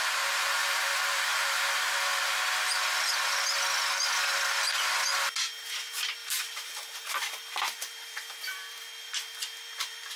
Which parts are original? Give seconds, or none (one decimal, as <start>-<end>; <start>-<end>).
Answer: 0.0-0.6; 2.3-6.2